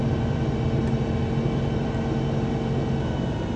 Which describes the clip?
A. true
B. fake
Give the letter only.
A